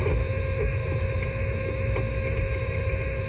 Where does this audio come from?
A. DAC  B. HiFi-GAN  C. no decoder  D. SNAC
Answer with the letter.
C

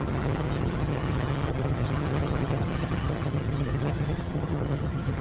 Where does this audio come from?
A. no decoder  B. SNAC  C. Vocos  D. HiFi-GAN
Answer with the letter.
D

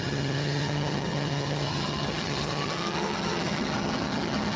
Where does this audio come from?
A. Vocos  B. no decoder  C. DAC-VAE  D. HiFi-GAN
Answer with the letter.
D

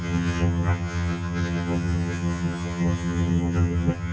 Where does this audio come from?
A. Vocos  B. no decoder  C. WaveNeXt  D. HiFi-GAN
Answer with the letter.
D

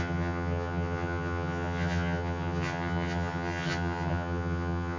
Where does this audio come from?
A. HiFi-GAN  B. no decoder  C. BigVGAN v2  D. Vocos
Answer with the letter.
A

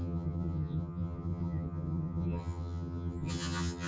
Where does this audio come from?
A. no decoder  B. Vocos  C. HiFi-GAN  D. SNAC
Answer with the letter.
C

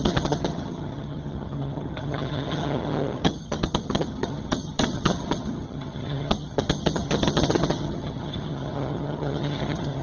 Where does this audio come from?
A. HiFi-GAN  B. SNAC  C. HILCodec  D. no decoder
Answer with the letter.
A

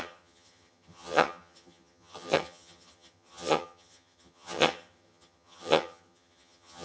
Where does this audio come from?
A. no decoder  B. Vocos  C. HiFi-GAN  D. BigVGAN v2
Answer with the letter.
C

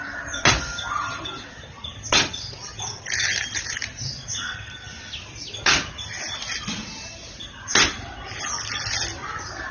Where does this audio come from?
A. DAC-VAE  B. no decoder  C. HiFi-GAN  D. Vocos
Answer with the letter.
B